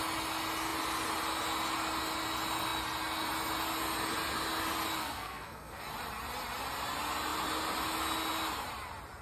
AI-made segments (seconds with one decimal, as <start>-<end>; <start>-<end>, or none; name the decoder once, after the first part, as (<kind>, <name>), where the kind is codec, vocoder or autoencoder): 5.0-5.8 (codec, SNAC)